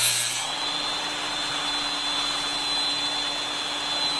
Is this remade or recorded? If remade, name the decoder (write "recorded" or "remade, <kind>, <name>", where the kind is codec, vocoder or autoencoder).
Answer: recorded